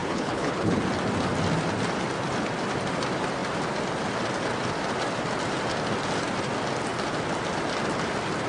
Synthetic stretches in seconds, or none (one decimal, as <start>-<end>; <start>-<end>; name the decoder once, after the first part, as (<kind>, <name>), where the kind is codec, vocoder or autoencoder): 0.0-0.8 (codec, HILCodec)